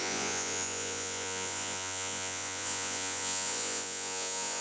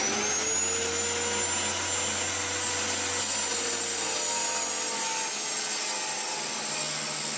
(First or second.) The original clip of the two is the second